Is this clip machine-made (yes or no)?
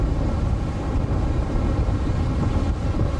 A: no